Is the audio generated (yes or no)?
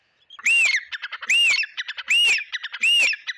no